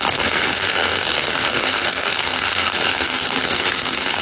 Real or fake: fake